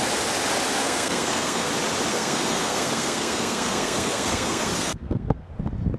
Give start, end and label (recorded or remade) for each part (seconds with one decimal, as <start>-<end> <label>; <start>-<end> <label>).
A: 0.0-0.7 recorded; 0.7-1.7 remade; 1.7-2.1 recorded; 2.1-5.5 remade; 5.5-6.0 recorded